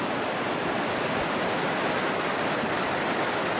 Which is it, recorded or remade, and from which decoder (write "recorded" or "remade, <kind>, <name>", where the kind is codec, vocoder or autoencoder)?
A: recorded